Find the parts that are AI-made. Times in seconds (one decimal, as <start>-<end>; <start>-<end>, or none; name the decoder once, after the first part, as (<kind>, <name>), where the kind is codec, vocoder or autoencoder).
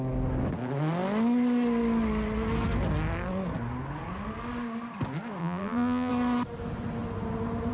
5.4-6.1 (vocoder, BigVGAN v2)